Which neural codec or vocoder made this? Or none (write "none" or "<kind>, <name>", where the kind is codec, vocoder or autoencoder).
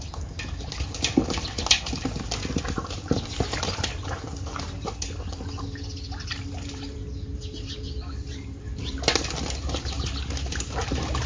none